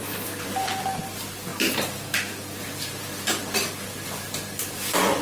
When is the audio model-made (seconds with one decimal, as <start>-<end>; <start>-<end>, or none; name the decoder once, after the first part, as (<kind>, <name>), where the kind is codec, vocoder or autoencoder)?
0.0-1.5 (vocoder, BigVGAN v2); 4.6-5.2

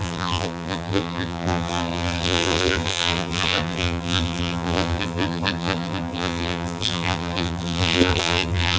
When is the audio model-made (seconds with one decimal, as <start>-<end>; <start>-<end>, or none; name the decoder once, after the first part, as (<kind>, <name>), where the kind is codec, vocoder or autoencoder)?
0.0-8.8 (vocoder, BigVGAN v2)